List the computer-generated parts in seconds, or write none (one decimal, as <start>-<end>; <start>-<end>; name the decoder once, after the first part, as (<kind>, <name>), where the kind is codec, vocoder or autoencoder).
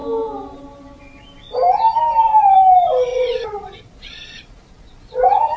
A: 3.1-5.6 (vocoder, Vocos)